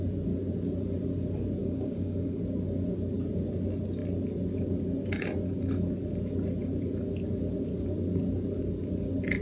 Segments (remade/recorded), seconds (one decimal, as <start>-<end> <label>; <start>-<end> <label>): 0.0-1.6 recorded; 1.6-2.4 remade; 2.4-9.4 recorded